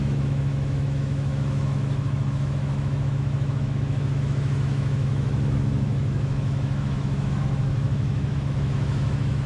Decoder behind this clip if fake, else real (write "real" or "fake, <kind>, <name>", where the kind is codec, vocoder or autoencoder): fake, autoencoder, DAC-VAE